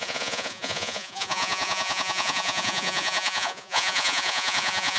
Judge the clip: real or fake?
fake